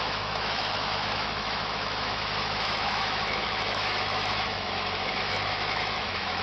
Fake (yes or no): yes